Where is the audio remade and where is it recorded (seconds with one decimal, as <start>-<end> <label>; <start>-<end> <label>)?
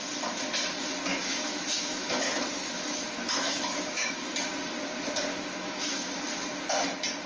0.0-1.1 recorded; 1.1-4.3 remade; 4.3-5.3 recorded; 5.3-6.2 remade; 6.2-7.3 recorded